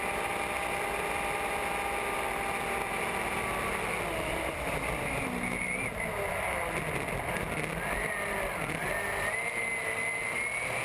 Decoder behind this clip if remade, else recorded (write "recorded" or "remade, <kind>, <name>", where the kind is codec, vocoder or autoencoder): recorded